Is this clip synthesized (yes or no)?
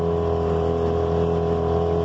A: no